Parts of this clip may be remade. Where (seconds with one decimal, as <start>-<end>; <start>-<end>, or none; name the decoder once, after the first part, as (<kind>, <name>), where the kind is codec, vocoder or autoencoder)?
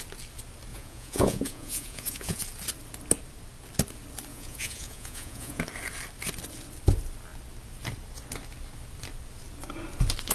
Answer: 0.7-2.4 (vocoder, Vocos); 4.3-5.6